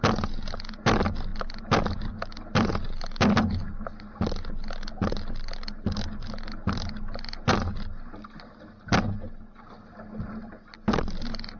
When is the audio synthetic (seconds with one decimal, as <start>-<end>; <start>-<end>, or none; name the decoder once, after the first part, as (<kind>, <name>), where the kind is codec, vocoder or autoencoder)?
none